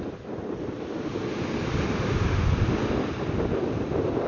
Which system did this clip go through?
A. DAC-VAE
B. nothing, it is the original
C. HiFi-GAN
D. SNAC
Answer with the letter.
B